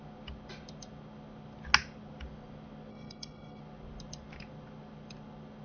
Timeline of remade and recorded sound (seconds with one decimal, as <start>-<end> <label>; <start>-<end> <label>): 0.0-2.9 recorded; 2.9-3.6 remade; 3.6-5.6 recorded